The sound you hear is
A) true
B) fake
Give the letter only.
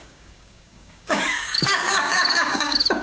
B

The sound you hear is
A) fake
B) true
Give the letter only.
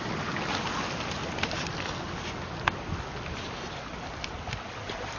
B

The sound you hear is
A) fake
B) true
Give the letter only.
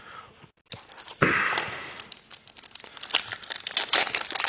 B